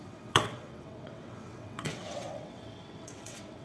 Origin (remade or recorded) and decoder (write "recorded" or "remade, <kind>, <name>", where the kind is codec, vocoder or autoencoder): remade, vocoder, WaveNeXt